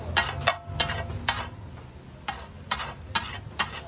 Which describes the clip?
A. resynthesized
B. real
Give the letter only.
B